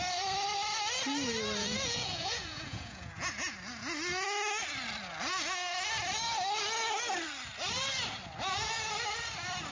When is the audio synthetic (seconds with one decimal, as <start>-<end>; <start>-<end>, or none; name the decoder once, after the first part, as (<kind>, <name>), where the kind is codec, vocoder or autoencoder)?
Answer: 1.6-3.1 (vocoder, Vocos)